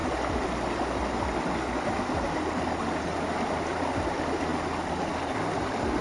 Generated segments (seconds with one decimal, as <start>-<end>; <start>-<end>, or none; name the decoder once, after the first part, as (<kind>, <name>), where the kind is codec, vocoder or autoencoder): 3.6-4.5 (vocoder, BigVGAN v2)